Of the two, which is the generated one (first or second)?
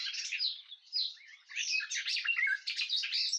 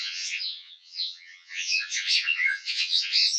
second